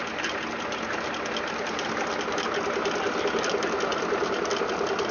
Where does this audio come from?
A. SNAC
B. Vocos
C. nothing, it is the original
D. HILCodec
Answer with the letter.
C